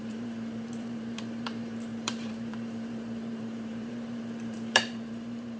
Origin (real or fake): fake